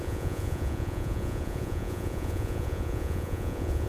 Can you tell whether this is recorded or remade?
remade